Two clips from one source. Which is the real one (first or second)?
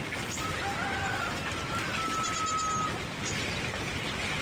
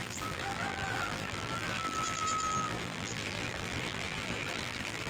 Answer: first